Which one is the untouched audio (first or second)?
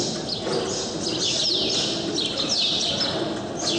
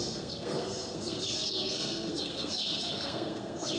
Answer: first